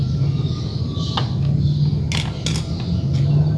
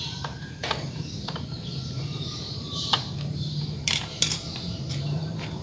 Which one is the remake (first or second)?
second